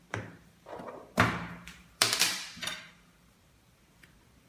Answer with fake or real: fake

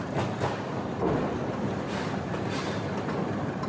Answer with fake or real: real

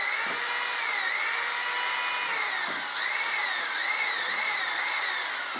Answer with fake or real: real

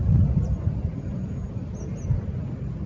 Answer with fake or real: real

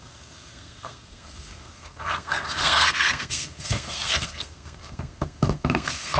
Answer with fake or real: fake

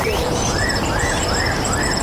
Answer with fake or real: fake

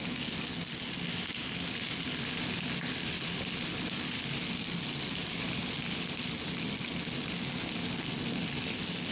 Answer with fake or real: real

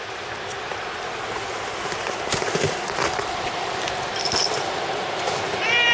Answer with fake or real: fake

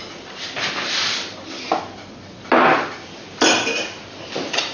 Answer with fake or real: real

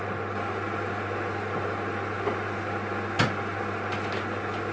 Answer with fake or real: real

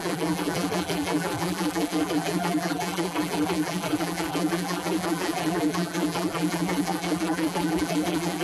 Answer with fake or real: fake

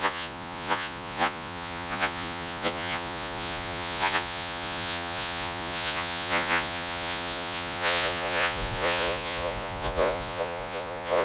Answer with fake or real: fake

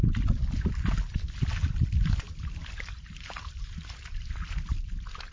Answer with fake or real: real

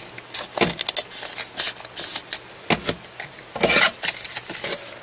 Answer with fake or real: real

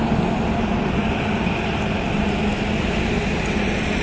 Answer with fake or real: real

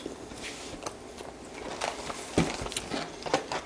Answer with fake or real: real